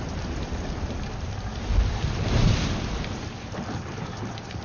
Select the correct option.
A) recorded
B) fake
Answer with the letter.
A